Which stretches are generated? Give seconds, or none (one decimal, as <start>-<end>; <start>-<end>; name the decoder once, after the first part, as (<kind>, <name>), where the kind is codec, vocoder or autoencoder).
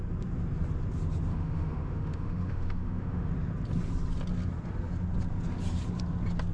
1.3-3.3 (autoencoder, DAC-VAE)